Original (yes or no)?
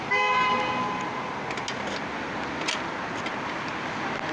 yes